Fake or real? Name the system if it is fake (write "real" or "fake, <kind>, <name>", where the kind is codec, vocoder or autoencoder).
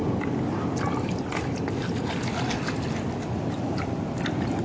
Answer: real